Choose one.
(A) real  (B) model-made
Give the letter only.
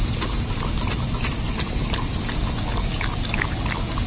A